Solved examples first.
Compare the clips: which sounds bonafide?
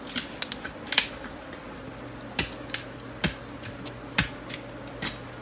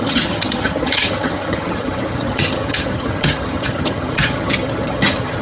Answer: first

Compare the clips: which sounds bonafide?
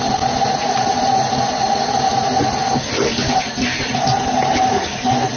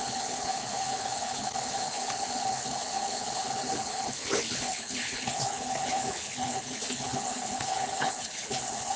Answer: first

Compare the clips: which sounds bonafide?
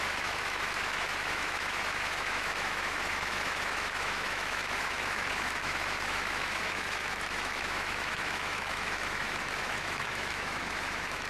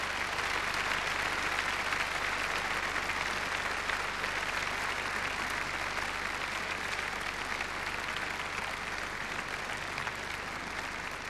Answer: second